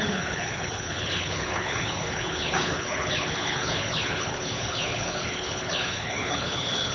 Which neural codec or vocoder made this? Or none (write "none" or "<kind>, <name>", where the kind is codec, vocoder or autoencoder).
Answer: codec, HILCodec